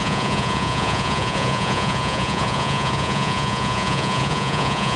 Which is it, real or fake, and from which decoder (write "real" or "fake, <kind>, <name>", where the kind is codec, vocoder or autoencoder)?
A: fake, vocoder, Vocos